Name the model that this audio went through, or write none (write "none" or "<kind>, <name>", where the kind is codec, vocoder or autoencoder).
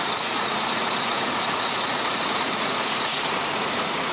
vocoder, Vocos